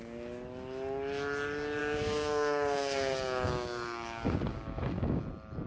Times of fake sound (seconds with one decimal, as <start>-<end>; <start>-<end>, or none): 1.8-5.2